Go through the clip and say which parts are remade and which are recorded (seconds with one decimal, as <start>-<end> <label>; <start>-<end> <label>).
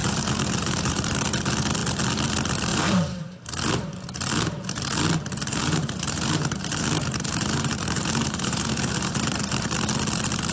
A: 0.0-1.2 remade; 1.2-2.7 recorded; 2.7-3.5 remade; 3.5-5.6 recorded; 5.6-9.7 remade; 9.7-10.5 recorded